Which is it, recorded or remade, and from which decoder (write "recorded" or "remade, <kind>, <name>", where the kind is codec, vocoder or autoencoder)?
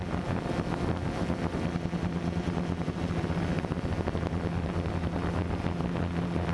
recorded